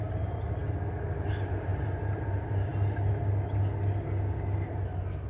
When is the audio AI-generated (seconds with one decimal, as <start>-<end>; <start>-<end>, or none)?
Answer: 0.0-0.6; 1.2-2.7; 4.7-5.3